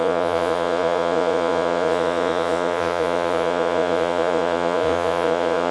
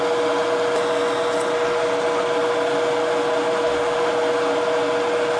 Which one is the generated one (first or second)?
first